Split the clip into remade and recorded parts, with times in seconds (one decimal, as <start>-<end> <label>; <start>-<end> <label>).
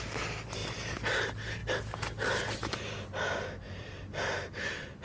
0.0-5.0 recorded